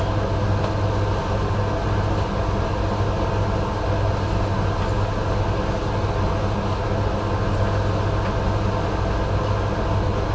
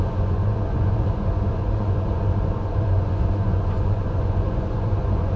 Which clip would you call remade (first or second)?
second